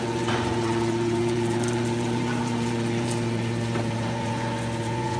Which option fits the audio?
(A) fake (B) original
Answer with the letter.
A